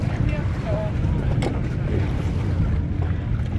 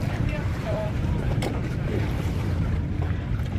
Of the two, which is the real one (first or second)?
first